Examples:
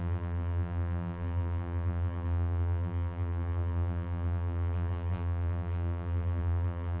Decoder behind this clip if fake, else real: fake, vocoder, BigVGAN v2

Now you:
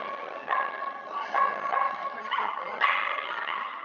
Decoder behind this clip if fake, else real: fake, vocoder, HiFi-GAN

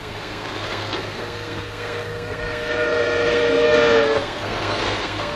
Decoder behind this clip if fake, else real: fake, codec, SNAC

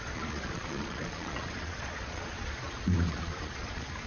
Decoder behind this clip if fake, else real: fake, vocoder, Vocos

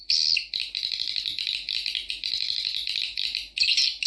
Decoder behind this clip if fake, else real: real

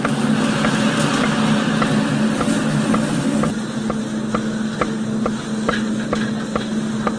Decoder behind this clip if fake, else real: real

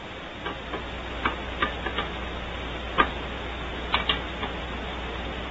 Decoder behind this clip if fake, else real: real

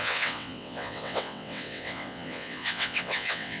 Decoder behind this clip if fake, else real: fake, vocoder, WaveNeXt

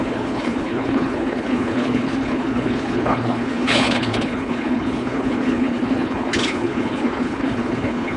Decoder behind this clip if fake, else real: fake, codec, HILCodec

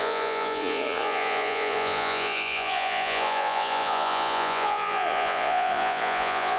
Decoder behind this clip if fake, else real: fake, vocoder, Vocos